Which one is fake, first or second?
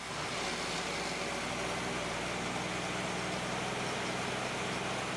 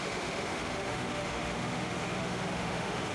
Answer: second